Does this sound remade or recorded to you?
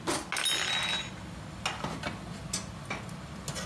recorded